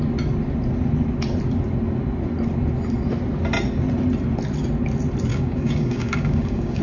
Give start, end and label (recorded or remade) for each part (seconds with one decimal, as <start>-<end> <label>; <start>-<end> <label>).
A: 0.0-5.3 recorded; 5.3-6.8 remade